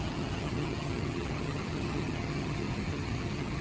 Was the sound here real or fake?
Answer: fake